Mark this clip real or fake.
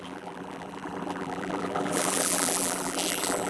fake